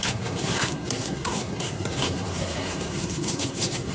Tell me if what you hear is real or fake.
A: fake